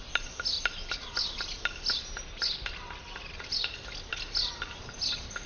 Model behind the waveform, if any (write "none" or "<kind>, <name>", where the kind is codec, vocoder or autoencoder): none